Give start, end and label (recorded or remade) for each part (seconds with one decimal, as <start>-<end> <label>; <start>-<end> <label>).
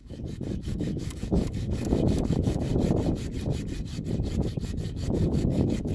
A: 0.0-2.7 remade; 2.7-4.4 recorded; 4.4-5.9 remade